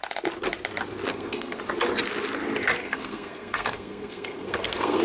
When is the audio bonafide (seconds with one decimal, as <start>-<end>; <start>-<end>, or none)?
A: 0.0-1.1; 1.6-2.8